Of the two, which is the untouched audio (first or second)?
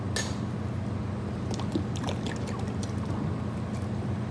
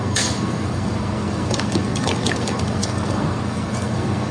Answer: first